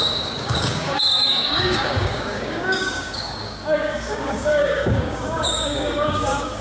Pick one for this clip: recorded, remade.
remade